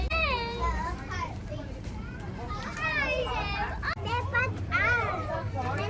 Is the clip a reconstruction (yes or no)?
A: yes